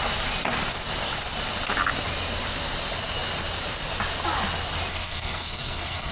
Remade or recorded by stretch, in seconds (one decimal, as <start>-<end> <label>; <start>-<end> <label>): 0.0-4.9 recorded; 4.9-6.1 remade